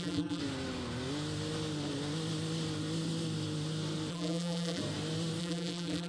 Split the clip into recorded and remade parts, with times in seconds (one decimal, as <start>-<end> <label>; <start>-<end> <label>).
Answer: 0.0-0.4 remade; 0.4-4.1 recorded; 4.1-4.8 remade; 4.8-5.4 recorded; 5.4-6.1 remade